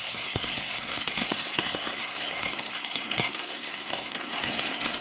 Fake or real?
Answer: fake